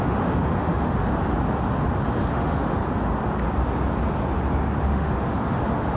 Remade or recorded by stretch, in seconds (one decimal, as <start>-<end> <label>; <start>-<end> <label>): 0.0-1.1 remade; 1.1-2.3 recorded; 2.3-2.8 remade; 2.8-4.8 recorded; 4.8-6.0 remade